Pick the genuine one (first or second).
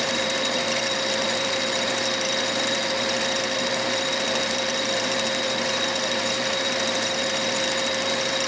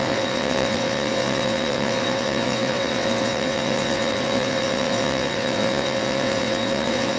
first